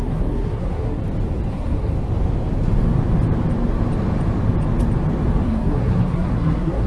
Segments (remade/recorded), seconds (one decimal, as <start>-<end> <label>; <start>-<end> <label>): 0.0-1.0 remade; 1.0-1.5 recorded; 1.5-1.9 remade; 1.9-5.4 recorded; 5.4-6.9 remade

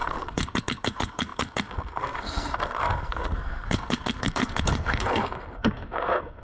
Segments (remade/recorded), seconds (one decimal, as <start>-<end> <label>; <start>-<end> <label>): 0.0-6.4 remade